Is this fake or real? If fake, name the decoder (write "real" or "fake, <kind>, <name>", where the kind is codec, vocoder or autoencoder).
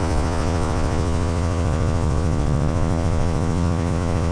fake, vocoder, Vocos